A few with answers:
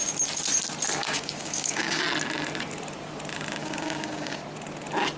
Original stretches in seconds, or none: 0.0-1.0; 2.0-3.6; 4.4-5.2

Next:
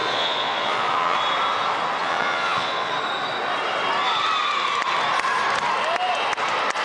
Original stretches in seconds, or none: 1.2-2.0; 2.9-6.8

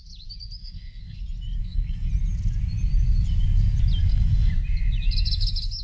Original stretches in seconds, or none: 0.0-0.6; 1.2-1.6; 2.1-4.0; 4.5-5.8

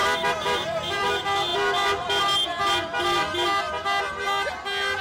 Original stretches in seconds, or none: 1.1-5.0

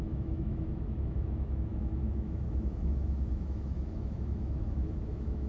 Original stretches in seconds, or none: none